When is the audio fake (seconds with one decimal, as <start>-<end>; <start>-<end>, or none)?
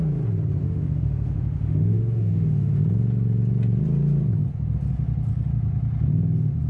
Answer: 0.6-2.8